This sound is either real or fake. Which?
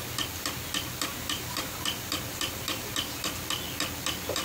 real